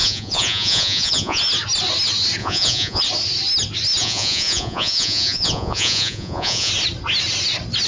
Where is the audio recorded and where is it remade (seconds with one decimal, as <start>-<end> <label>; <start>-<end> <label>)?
0.0-1.4 remade; 1.4-2.4 recorded; 2.4-3.0 remade; 3.0-4.0 recorded; 4.0-6.7 remade; 6.7-7.9 recorded